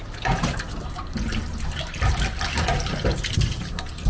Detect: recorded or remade recorded